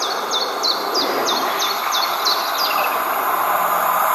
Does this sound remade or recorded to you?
recorded